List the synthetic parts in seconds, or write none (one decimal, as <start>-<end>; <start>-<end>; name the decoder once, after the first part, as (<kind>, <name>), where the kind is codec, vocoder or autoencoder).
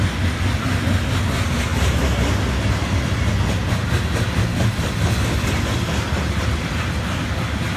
none